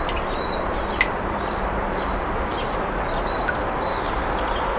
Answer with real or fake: fake